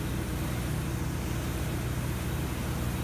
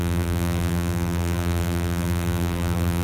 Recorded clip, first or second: first